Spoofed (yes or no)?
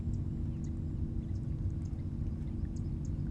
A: no